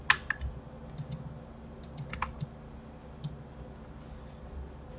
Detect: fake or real real